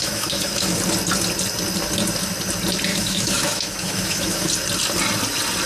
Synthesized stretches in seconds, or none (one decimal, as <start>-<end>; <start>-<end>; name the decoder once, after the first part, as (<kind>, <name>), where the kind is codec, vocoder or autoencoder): 0.0-0.8 (autoencoder, DAC-VAE); 2.9-4.5